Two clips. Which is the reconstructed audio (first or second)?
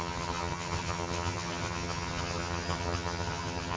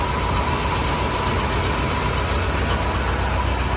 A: first